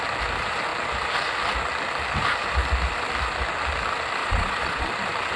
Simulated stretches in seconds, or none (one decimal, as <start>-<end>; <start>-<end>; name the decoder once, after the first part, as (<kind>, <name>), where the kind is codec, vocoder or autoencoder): 4.2-4.9 (vocoder, Vocos)